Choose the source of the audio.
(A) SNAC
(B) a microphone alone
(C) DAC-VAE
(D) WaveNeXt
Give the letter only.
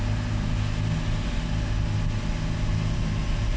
B